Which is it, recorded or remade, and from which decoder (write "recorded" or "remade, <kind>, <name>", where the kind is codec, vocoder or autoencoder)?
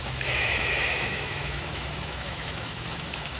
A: remade, autoencoder, DAC-VAE